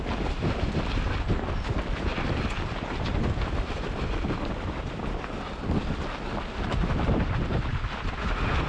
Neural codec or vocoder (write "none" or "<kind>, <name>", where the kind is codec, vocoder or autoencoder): none